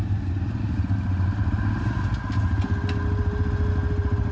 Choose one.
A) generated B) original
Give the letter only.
B